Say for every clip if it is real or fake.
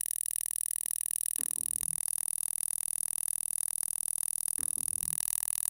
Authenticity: fake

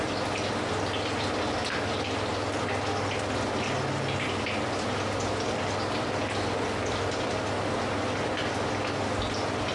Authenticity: real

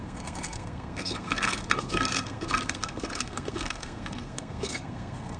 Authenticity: fake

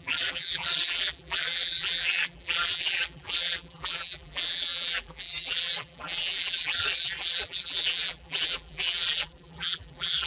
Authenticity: fake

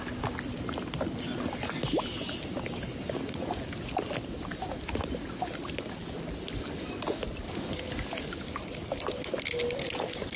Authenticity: real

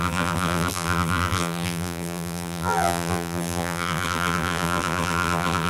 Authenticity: fake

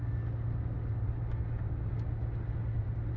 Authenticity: real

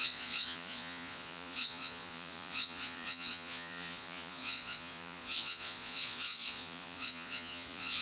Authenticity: fake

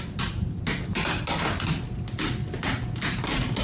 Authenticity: real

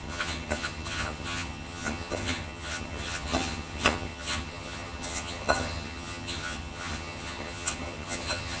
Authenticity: fake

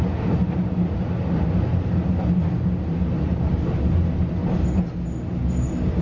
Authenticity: real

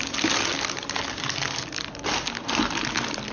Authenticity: real